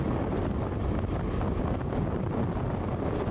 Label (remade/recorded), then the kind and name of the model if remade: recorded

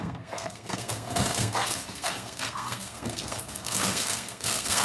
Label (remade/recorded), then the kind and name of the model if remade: remade, codec, SNAC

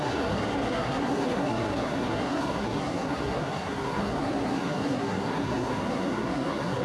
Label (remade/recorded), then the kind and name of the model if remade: remade, codec, SNAC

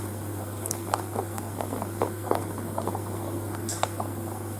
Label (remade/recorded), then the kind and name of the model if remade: remade, codec, SNAC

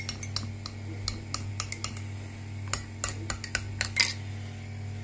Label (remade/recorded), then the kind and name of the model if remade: recorded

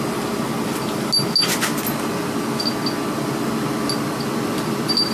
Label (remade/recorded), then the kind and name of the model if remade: recorded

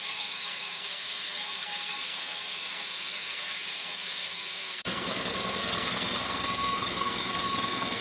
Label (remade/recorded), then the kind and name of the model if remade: remade, codec, SNAC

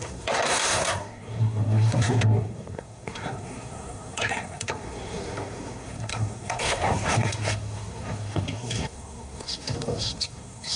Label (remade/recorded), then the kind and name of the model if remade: remade, codec, SNAC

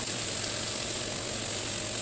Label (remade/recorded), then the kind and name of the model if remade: recorded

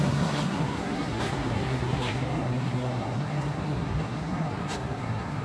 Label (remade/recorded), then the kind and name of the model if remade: remade, codec, SNAC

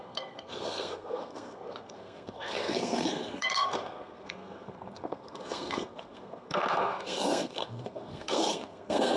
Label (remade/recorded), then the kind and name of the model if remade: remade, codec, SNAC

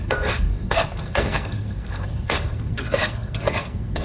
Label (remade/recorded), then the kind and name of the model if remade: remade, codec, SNAC